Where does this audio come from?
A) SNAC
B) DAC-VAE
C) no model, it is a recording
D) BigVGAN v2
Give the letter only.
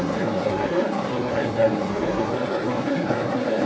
A